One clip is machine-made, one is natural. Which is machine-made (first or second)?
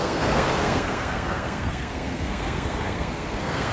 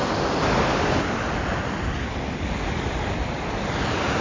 first